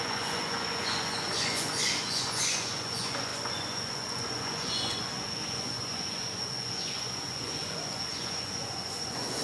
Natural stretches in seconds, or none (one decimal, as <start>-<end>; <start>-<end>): none